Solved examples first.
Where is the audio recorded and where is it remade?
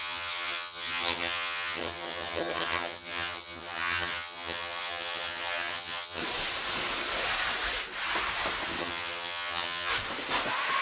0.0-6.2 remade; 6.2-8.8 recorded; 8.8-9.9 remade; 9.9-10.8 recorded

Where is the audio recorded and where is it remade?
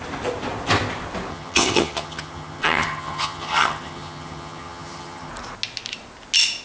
0.0-1.3 recorded; 1.3-5.3 remade; 5.3-6.6 recorded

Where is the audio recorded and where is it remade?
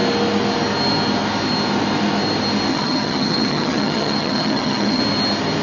0.0-2.7 recorded; 2.7-5.0 remade; 5.0-5.6 recorded